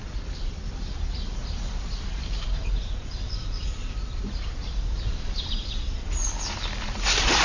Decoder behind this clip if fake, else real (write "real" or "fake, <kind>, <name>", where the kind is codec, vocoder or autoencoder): fake, vocoder, BigVGAN v2